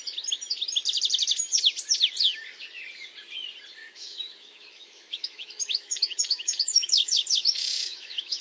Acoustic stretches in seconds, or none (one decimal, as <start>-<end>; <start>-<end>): 0.0-3.8